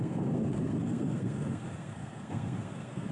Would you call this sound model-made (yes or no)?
yes